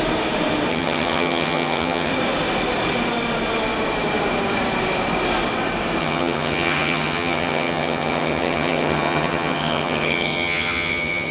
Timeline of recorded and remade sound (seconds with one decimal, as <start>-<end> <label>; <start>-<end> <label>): 0.0-0.7 recorded; 0.7-2.1 remade; 2.1-6.0 recorded; 6.0-11.3 remade